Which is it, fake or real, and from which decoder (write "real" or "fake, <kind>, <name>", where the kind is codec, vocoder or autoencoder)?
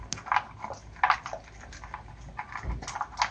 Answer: real